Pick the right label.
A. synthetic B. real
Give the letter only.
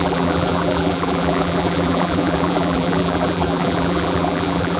A